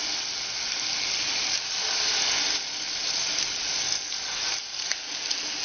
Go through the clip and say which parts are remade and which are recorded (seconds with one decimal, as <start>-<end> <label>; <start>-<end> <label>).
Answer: 0.0-5.6 recorded